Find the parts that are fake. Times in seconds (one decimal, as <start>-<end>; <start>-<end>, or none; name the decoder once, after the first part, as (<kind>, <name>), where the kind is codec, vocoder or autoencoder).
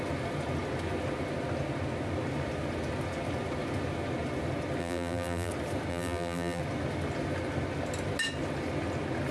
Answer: 4.8-5.5 (vocoder, BigVGAN v2); 5.9-6.6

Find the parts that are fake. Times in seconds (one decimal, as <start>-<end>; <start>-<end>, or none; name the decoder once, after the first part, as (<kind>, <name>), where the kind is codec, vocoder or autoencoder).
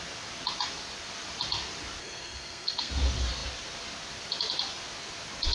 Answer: 2.0-2.9 (codec, SNAC)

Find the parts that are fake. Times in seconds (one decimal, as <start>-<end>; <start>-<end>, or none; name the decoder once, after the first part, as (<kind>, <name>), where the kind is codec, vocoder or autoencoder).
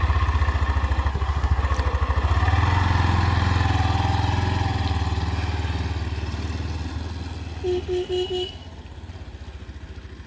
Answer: 1.1-1.6 (codec, SNAC)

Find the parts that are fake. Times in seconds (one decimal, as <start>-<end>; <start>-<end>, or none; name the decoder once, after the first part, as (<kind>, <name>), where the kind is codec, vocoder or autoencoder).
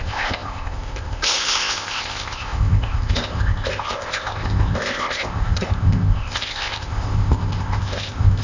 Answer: 0.0-8.4 (codec, ZipCodec)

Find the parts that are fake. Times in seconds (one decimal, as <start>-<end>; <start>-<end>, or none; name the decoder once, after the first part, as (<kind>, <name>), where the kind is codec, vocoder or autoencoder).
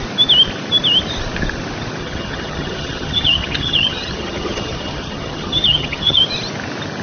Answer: 2.0-6.2 (vocoder, HiFi-GAN)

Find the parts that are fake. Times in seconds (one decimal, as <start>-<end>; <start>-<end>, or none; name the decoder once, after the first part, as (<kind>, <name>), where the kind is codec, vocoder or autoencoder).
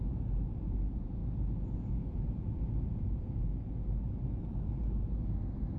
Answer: 0.0-1.2 (vocoder, Vocos); 1.9-3.5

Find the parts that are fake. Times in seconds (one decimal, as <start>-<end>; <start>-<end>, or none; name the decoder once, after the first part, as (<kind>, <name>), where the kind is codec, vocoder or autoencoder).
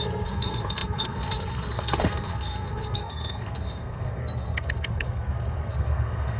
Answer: 0.0-6.4 (codec, SNAC)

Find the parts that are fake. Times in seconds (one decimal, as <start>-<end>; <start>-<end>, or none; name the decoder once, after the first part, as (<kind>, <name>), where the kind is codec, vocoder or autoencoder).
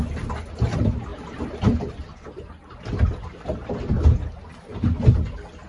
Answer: none